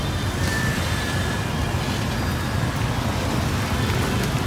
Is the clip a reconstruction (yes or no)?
no